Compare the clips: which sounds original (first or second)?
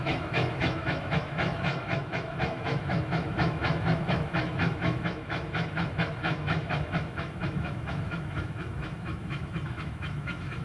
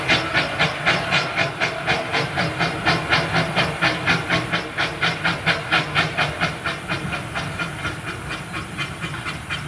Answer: second